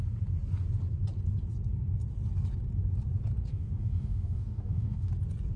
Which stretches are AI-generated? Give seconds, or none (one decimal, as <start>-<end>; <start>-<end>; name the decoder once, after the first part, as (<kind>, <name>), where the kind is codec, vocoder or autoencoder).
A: 3.5-5.1 (codec, DAC)